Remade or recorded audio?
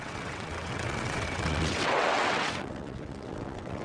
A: remade